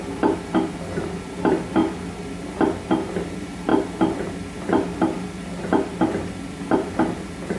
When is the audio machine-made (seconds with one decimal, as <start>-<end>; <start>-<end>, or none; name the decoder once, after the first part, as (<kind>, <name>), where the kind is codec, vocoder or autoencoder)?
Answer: 0.0-1.8 (vocoder, BigVGAN v2); 3.2-3.7; 4.6-7.6